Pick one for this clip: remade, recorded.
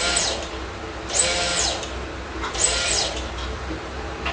remade